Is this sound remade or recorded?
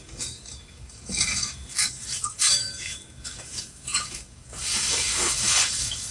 remade